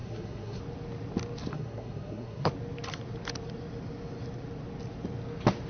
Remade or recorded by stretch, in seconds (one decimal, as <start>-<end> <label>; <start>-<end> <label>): 0.0-0.6 remade; 0.6-1.5 recorded; 1.5-2.5 remade; 2.5-5.7 recorded